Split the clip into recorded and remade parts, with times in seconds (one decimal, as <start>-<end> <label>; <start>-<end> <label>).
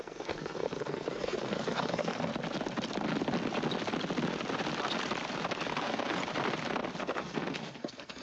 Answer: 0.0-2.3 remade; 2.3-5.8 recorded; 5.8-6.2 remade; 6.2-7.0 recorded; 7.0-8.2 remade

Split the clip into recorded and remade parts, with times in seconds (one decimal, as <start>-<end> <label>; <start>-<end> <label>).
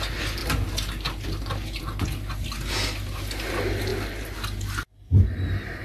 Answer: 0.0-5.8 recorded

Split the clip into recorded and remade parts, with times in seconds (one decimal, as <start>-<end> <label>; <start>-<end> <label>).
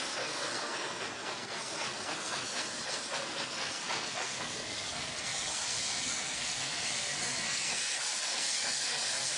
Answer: 0.0-9.4 remade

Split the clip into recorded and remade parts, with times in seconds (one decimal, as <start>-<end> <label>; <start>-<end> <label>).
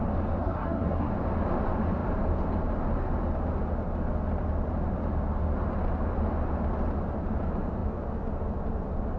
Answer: 0.0-0.4 recorded; 0.4-1.1 remade; 1.1-9.2 recorded